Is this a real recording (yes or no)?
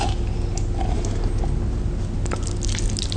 yes